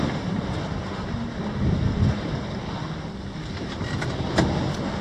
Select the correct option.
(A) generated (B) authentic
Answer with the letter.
B